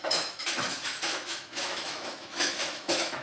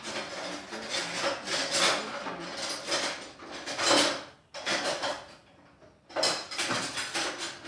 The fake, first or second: first